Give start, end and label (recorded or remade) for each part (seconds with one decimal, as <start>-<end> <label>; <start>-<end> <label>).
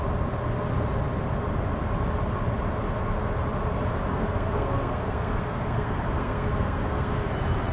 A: 0.0-4.1 recorded; 4.1-7.3 remade; 7.3-7.7 recorded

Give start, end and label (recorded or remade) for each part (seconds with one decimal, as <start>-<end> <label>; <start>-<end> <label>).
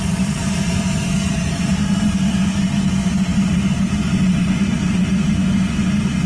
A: 0.0-0.4 recorded; 0.4-2.4 remade; 2.4-3.3 recorded; 3.3-5.1 remade; 5.1-6.3 recorded